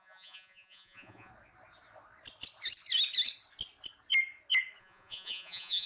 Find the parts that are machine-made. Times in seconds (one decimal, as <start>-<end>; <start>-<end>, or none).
0.0-1.3; 4.8-5.9